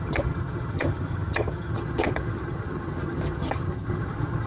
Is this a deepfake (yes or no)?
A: yes